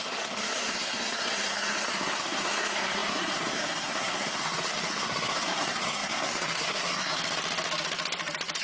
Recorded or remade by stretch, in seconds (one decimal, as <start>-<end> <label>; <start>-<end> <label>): 0.0-7.2 remade; 7.2-8.6 recorded